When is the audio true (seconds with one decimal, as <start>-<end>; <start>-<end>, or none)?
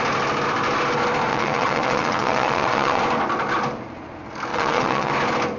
0.0-1.3; 3.0-4.5; 5.1-5.6